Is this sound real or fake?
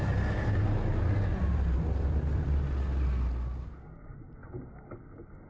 real